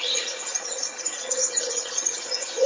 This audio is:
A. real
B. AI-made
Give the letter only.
B